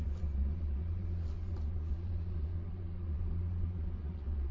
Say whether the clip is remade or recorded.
remade